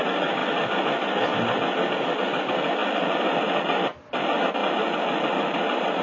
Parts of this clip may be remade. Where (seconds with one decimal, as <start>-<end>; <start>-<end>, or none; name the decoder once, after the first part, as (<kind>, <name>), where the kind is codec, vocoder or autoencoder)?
2.8-3.6 (vocoder, BigVGAN v2); 4.6-6.0